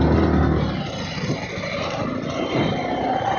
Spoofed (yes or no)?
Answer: no